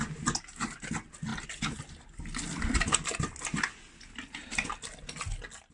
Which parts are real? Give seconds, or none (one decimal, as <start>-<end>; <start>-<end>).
0.0-5.7